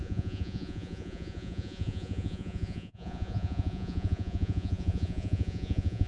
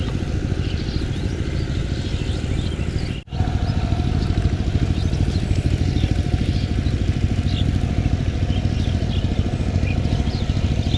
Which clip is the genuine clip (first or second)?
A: second